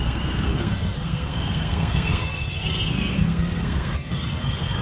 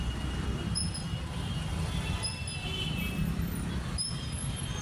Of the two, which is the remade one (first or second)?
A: first